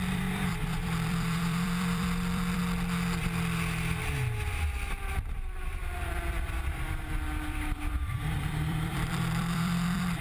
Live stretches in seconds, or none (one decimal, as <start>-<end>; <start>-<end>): 2.6-5.2